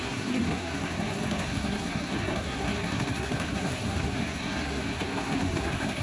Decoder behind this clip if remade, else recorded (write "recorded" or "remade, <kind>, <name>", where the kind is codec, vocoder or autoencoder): remade, codec, SNAC